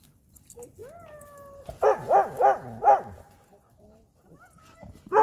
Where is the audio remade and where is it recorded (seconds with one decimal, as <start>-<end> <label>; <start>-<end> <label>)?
0.0-0.8 remade; 0.8-3.6 recorded; 3.6-5.2 remade